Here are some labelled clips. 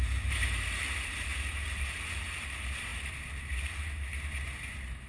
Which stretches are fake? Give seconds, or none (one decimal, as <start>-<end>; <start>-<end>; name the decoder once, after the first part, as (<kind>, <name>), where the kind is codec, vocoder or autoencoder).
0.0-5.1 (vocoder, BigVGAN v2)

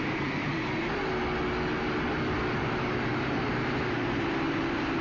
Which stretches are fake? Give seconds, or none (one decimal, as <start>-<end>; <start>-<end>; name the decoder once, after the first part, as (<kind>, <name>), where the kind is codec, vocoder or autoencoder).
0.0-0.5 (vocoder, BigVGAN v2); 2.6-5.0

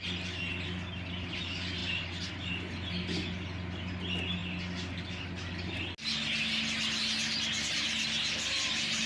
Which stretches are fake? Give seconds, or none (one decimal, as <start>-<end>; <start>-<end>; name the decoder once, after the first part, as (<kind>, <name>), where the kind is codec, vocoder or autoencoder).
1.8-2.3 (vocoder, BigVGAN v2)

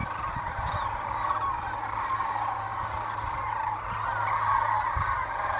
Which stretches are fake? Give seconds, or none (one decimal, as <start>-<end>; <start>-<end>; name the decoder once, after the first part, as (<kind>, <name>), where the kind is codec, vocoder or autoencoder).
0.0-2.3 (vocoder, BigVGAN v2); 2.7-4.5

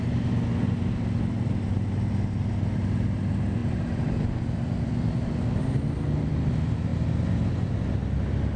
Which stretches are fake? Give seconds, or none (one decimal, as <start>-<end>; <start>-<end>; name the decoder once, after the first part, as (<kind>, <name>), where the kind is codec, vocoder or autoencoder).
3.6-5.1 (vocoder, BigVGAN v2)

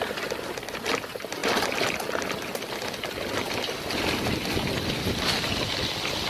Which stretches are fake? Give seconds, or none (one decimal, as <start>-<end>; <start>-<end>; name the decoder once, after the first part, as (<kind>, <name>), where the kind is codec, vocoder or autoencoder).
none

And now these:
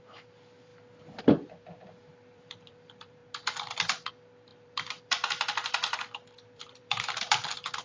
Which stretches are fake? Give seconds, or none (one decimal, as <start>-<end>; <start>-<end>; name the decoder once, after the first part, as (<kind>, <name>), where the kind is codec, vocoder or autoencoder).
0.0-0.7 (vocoder, BigVGAN v2); 1.2-3.2; 4.1-7.8

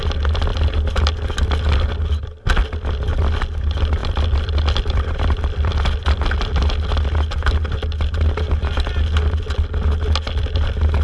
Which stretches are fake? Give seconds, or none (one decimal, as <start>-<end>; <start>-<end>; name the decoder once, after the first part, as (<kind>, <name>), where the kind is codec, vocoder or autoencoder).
0.5-2.2 (vocoder, BigVGAN v2); 4.0-5.7